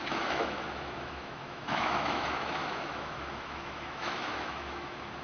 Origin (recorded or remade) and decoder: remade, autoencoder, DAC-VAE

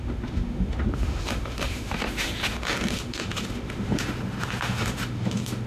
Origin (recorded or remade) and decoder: remade, autoencoder, DAC-VAE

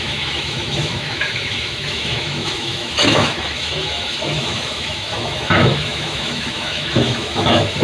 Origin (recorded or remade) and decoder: remade, autoencoder, DAC-VAE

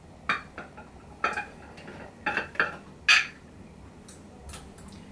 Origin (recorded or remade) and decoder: recorded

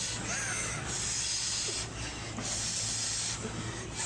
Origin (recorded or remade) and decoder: recorded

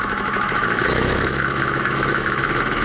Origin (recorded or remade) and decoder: remade, autoencoder, DAC-VAE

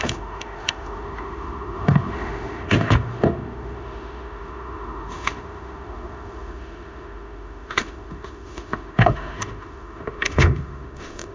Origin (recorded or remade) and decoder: remade, autoencoder, DAC-VAE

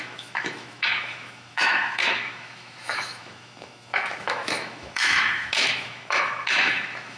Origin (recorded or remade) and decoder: remade, autoencoder, DAC-VAE